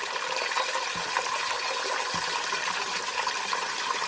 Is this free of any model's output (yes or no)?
yes